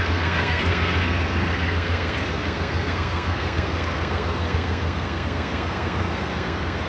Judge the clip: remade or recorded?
remade